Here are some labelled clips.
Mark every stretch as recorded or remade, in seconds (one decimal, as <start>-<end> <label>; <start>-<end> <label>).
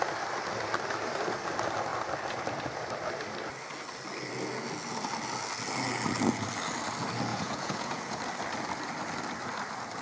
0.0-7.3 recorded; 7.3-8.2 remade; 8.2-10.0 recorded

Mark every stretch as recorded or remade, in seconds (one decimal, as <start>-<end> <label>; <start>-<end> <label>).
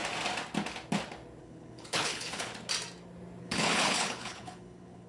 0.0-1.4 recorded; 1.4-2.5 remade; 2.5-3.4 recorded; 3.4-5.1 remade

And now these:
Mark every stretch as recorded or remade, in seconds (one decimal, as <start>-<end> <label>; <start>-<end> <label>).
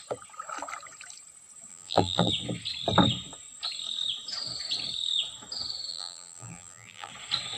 0.0-1.7 recorded; 1.7-2.3 remade; 2.3-5.9 recorded; 5.9-7.1 remade; 7.1-7.6 recorded